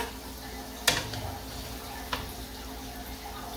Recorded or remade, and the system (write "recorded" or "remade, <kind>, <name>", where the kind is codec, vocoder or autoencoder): recorded